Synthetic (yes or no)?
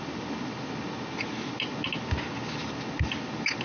no